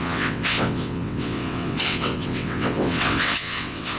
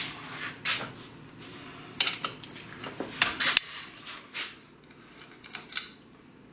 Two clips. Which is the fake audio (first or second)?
first